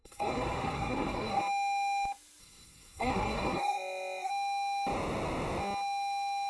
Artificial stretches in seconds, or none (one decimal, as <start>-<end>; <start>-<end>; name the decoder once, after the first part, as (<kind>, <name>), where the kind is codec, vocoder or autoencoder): 0.0-1.4 (codec, SNAC); 2.4-4.3